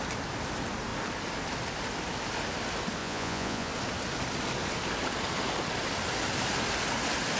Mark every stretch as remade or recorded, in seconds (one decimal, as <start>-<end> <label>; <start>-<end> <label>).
0.0-3.0 recorded; 3.0-3.7 remade; 3.7-7.4 recorded